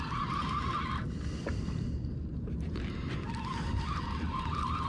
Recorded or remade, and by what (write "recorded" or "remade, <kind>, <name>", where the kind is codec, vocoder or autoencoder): recorded